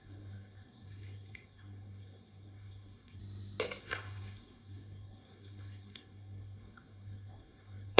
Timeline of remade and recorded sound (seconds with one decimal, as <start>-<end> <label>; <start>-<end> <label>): 0.0-3.2 remade; 3.2-3.8 recorded; 3.8-8.0 remade